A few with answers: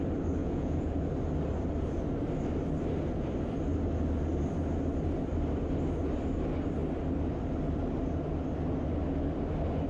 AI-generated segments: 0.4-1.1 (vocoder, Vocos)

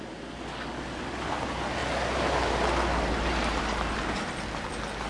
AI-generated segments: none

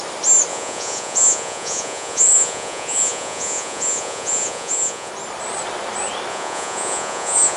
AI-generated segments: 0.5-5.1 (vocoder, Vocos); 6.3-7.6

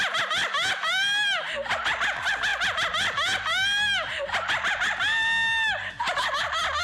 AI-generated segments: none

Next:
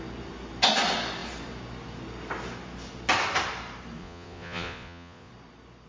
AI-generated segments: 4.0-5.3 (vocoder, Vocos)

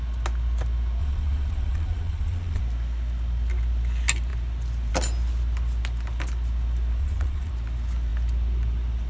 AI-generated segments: 1.0-2.6 (vocoder, Vocos); 7.0-7.5